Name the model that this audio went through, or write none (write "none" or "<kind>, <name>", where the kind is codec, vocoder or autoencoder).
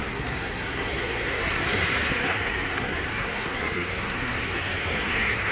codec, SNAC